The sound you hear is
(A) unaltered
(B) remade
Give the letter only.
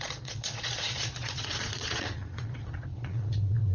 B